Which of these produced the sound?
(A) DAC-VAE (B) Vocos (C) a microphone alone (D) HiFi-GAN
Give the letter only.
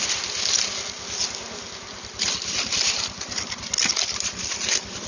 C